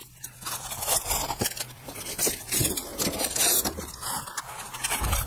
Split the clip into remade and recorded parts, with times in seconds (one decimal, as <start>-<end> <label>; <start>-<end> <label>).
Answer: 0.0-2.9 remade; 2.9-4.4 recorded; 4.4-5.3 remade